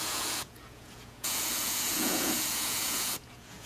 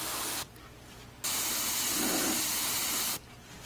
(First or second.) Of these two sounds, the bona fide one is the second